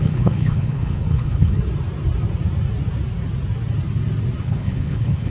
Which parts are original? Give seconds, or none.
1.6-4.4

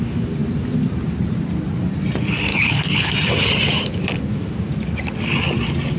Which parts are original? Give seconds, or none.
0.0-2.5; 3.1-6.0